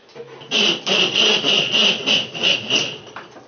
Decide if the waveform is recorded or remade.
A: recorded